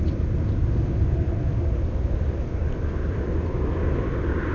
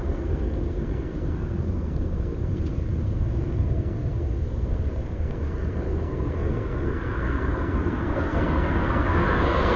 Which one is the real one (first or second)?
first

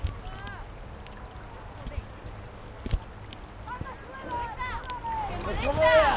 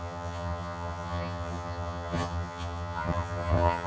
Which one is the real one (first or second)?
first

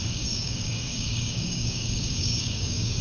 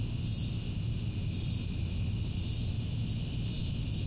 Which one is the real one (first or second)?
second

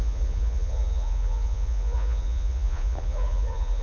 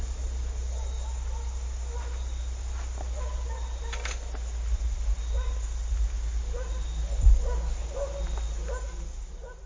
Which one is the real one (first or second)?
second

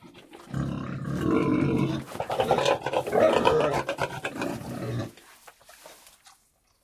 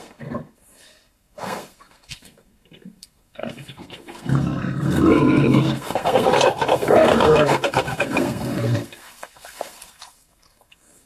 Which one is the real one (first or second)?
first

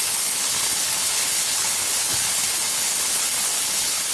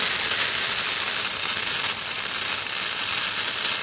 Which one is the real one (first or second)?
second